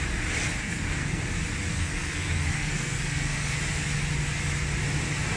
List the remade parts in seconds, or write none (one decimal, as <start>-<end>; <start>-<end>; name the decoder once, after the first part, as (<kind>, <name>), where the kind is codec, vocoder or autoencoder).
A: 0.6-1.2 (codec, SNAC); 1.7-3.6